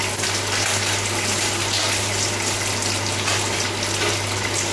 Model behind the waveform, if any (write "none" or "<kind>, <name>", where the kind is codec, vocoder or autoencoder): none